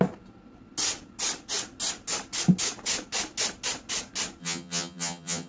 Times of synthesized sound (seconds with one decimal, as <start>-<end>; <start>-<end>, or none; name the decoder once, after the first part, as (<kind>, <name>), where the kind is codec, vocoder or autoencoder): 4.4-5.5 (vocoder, HiFi-GAN)